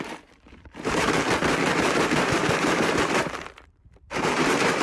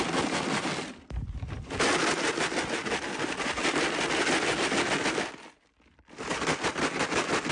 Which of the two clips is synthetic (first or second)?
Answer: first